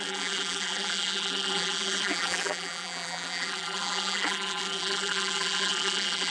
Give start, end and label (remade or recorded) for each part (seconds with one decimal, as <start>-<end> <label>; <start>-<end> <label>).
0.0-6.3 remade